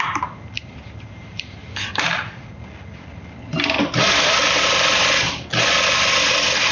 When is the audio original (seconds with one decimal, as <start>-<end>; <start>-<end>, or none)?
0.0-0.6; 2.4-4.4; 5.3-6.7